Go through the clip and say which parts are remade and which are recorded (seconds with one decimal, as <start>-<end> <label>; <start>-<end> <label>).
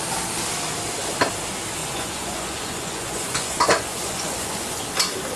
0.0-1.8 recorded; 1.8-4.8 remade; 4.8-5.4 recorded